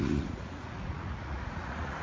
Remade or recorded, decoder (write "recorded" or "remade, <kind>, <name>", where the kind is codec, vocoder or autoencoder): remade, vocoder, Vocos